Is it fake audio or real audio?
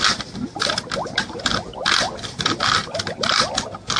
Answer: fake